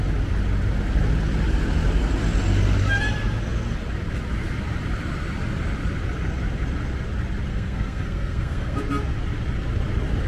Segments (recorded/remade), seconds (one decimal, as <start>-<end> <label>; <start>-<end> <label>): 0.0-7.5 recorded; 7.5-8.8 remade; 8.8-10.3 recorded